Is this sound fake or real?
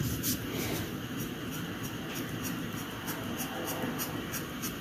real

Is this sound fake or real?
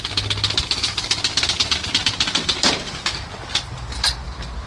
real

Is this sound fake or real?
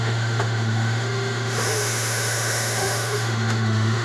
fake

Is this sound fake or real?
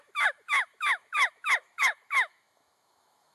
fake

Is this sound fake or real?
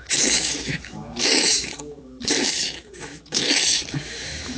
fake